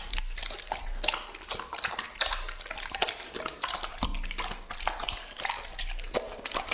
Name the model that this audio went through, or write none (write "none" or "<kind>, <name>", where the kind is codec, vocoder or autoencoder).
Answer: none